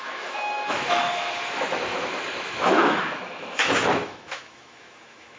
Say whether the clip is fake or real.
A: fake